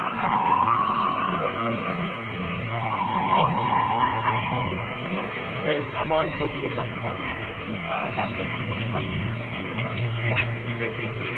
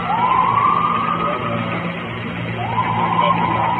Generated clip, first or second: first